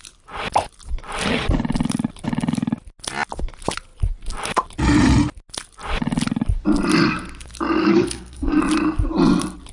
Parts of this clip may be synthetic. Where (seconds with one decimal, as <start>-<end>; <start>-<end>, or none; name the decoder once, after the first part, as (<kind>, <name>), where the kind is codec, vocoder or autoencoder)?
7.8-8.6 (codec, SNAC)